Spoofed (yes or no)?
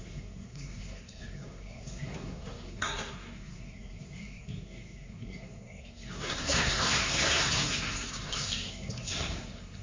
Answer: yes